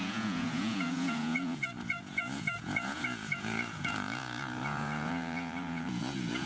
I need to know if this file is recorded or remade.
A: remade